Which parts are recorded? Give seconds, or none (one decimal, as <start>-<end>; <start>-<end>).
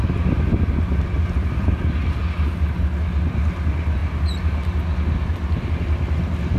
0.0-1.4; 2.2-6.6